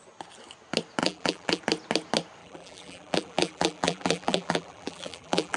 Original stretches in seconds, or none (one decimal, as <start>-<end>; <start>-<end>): 0.0-1.0; 1.6-2.4